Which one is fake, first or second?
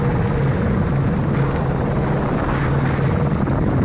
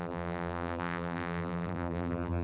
second